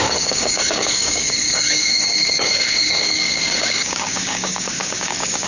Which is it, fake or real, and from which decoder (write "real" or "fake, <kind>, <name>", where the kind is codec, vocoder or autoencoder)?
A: fake, codec, DAC